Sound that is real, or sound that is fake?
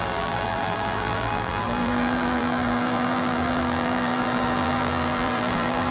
fake